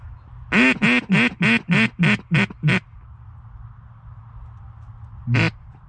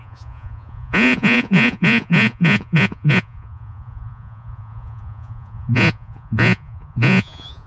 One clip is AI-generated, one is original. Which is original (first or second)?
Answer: first